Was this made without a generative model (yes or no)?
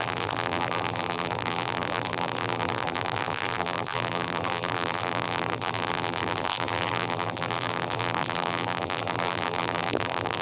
no